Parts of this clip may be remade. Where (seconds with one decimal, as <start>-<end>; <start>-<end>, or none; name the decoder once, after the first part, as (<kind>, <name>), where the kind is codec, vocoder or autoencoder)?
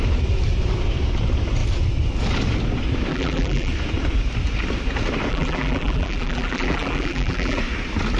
3.1-3.7 (vocoder, BigVGAN v2); 5.3-7.6